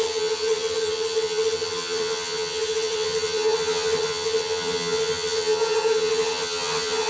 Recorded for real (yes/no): no